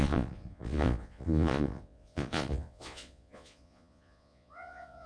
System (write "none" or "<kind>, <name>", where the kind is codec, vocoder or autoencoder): vocoder, Vocos